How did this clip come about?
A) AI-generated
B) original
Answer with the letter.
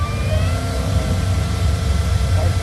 A